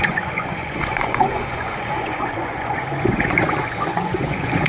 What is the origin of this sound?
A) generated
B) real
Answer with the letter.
A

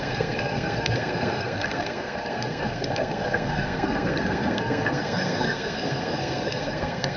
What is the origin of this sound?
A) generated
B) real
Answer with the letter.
A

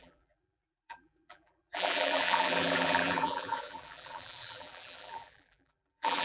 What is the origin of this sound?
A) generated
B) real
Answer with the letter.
A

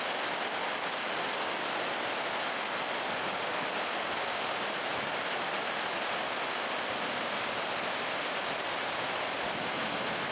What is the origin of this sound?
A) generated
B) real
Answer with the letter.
B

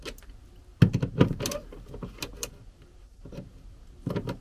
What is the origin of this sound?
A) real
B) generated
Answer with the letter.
A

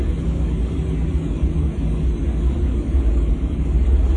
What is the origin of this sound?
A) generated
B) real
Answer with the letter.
A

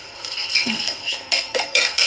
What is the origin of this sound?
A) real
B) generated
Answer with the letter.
B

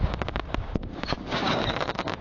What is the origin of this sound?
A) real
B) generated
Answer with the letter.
B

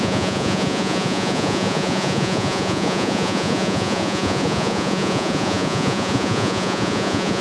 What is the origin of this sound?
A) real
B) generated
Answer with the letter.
B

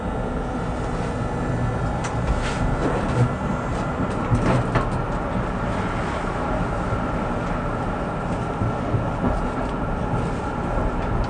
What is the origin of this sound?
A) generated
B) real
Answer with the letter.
B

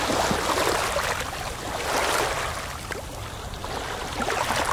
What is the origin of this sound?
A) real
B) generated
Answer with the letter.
A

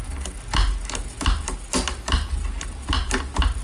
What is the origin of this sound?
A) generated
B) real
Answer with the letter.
B